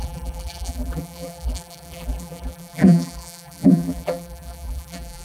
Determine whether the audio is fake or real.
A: fake